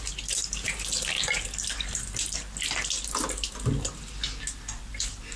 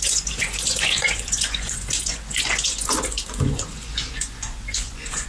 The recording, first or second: first